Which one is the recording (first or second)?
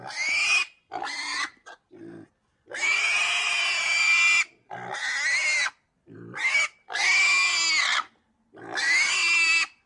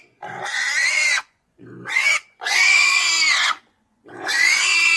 first